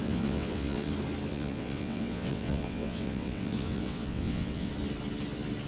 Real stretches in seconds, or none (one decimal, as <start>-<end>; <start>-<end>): 0.9-1.3; 4.7-5.7